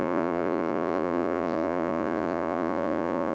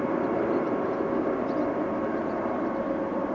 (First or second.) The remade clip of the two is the first